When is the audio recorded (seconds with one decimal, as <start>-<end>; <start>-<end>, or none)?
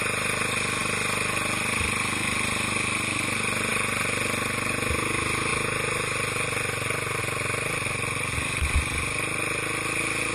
0.0-10.3